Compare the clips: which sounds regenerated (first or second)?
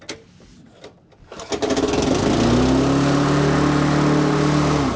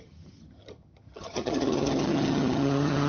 second